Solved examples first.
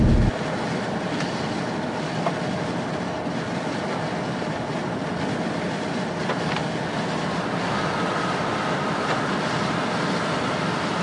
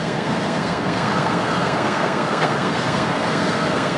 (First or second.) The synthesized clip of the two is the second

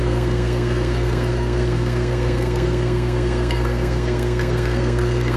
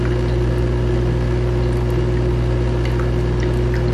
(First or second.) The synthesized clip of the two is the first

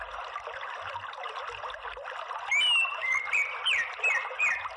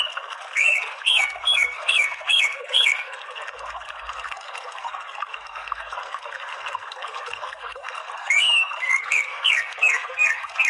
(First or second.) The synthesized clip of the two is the second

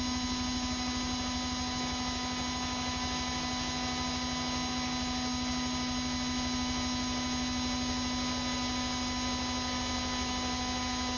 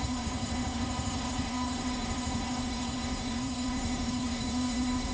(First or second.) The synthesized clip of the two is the second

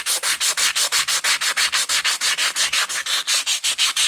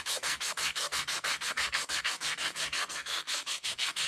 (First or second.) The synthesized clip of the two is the second